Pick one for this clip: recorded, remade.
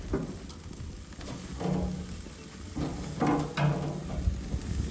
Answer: recorded